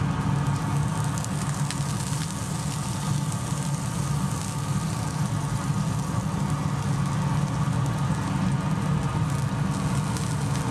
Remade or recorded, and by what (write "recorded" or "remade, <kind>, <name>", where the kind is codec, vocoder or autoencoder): recorded